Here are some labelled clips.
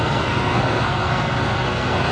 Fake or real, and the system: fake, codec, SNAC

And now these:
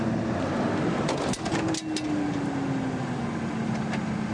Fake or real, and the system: real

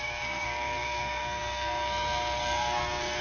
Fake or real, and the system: fake, codec, SNAC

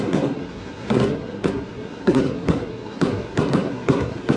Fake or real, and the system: fake, codec, SNAC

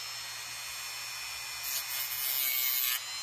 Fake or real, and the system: real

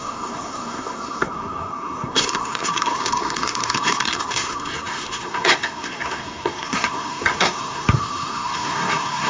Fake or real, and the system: fake, codec, SNAC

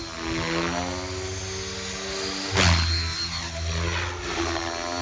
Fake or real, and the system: real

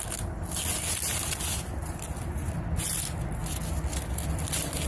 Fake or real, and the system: real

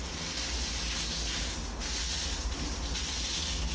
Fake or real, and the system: real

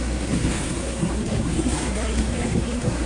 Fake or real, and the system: fake, codec, SNAC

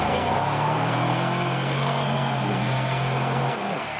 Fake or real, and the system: fake, codec, SNAC